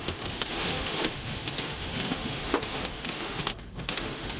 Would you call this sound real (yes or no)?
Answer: no